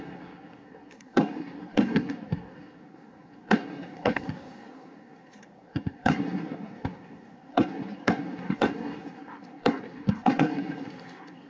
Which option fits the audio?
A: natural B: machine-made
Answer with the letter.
B